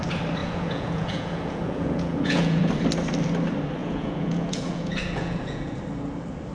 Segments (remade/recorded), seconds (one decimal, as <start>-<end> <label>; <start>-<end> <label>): 0.0-0.4 recorded; 0.4-2.7 remade; 2.7-3.8 recorded; 3.8-5.8 remade; 5.8-6.5 recorded